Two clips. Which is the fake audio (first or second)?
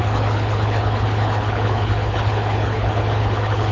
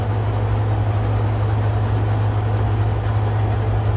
first